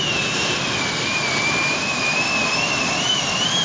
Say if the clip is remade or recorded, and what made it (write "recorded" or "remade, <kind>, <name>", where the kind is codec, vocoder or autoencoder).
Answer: recorded